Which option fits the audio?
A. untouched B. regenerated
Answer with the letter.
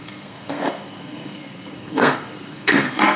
B